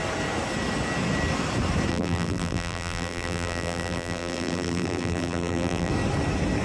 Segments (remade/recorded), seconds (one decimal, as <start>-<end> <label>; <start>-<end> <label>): 0.0-1.9 recorded; 1.9-5.9 remade; 5.9-6.6 recorded